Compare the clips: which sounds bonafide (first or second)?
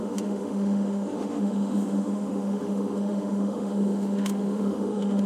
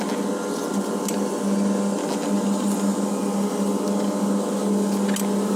second